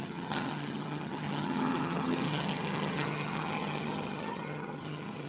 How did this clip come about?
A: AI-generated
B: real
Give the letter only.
A